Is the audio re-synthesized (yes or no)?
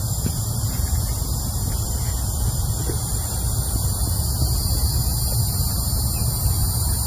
no